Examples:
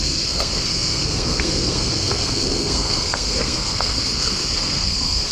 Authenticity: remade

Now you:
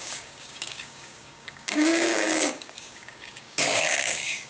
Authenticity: remade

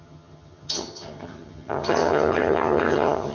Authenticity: remade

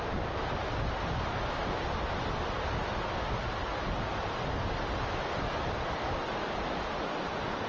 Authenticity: recorded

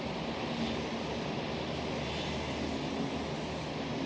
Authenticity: recorded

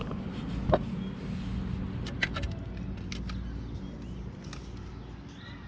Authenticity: recorded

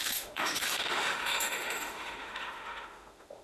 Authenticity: remade